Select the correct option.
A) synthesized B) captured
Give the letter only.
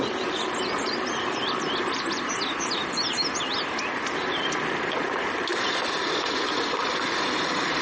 B